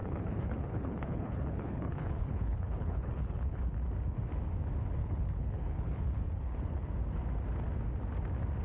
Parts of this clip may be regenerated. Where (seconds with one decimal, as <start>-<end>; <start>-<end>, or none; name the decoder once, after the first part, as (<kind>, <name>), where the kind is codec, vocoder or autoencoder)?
0.0-3.6 (codec, HILCodec); 5.0-6.9